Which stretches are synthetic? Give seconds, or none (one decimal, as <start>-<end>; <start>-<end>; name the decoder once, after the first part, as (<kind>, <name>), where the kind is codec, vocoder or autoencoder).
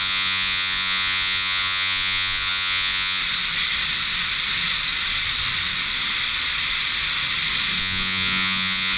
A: 0.0-3.2 (vocoder, Vocos); 7.8-9.0